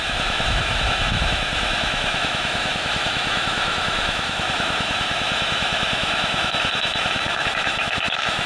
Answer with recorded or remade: remade